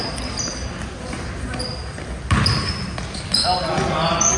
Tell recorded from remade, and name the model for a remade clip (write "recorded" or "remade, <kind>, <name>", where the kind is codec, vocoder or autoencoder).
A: recorded